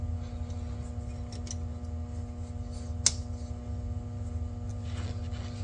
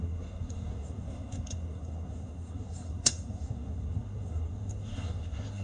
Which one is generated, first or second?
second